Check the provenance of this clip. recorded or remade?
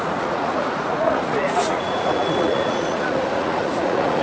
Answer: remade